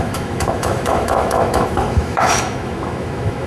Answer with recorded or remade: remade